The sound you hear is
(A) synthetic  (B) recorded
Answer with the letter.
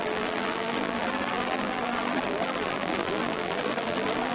A